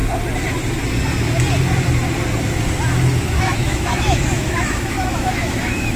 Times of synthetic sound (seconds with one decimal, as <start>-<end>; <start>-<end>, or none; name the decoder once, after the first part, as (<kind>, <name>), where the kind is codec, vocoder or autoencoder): 3.2-6.0 (autoencoder, DAC-VAE)